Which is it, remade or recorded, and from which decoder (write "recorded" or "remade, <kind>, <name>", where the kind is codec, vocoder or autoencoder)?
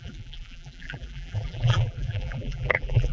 remade, vocoder, BigVGAN v2